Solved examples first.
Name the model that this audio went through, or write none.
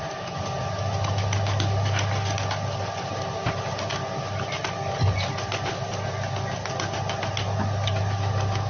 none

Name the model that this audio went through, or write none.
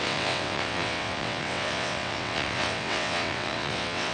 vocoder, WaveNeXt